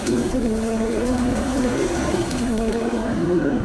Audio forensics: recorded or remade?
remade